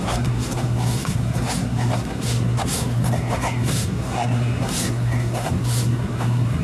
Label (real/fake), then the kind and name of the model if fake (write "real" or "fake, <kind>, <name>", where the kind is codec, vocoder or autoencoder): fake, codec, SNAC